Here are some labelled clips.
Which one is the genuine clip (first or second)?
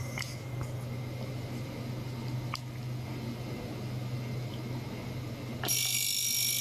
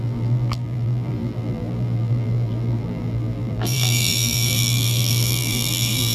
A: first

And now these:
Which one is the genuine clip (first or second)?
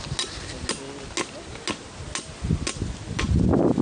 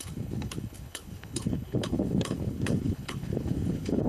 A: first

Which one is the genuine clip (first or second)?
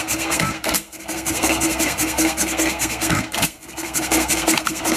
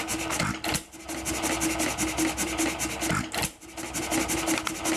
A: second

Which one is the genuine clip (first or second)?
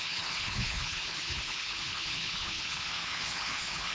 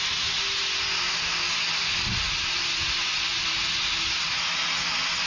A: second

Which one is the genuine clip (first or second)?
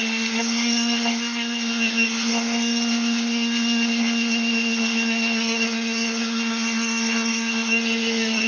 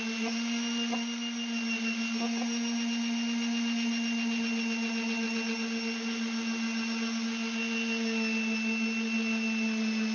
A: second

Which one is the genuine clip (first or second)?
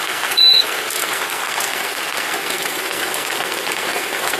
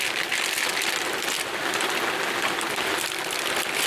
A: second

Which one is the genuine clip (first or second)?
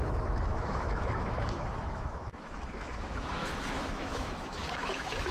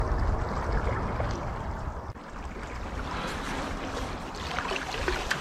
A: second